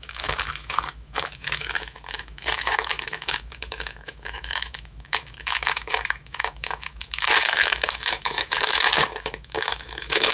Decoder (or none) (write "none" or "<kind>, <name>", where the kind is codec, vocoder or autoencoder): autoencoder, DAC-VAE